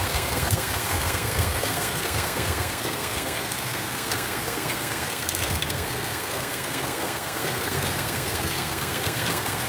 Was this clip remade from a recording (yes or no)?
yes